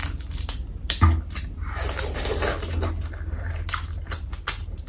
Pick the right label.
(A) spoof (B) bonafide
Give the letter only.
B